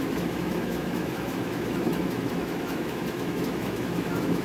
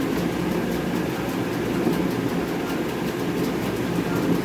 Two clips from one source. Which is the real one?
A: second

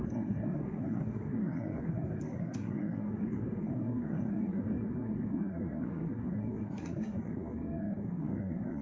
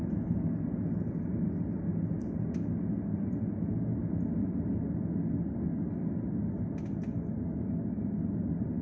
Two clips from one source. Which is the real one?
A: second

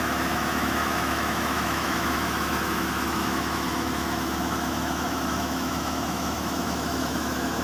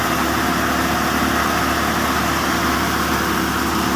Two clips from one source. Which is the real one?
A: second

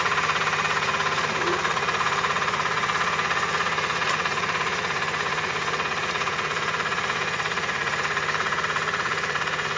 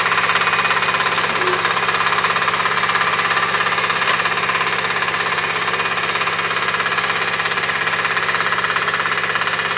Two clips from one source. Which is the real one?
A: second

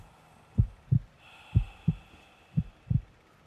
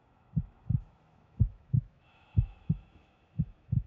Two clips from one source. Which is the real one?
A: first